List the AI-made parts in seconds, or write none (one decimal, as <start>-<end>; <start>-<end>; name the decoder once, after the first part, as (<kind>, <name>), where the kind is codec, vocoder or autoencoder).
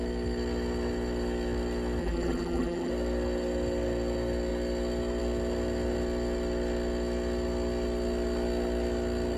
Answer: 2.0-2.9 (vocoder, BigVGAN v2)